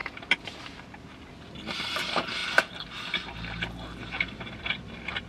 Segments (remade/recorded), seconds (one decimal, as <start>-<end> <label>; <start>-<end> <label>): 0.0-5.3 remade